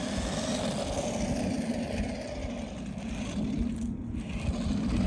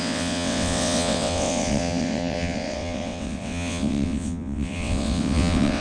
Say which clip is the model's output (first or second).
second